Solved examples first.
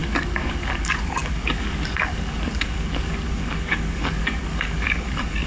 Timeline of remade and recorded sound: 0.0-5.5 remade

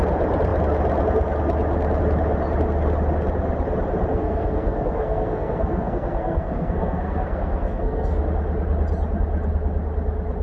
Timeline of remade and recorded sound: 0.0-4.1 recorded; 4.1-8.2 remade; 8.2-10.4 recorded

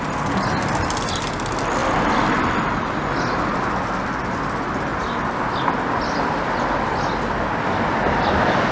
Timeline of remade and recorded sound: 0.0-1.8 recorded; 1.8-2.3 remade; 2.3-8.7 recorded

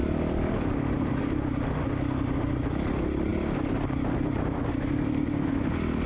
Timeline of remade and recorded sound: 0.0-0.7 remade; 0.7-6.1 recorded

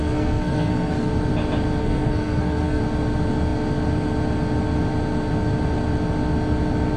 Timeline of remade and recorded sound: 0.0-1.1 remade; 1.1-1.8 recorded; 1.8-2.8 remade; 2.8-7.0 recorded

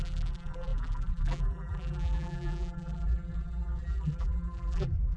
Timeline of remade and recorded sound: 0.0-5.2 remade